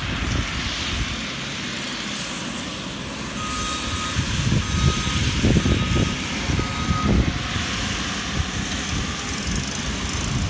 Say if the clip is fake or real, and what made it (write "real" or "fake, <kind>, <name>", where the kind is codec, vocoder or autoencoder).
real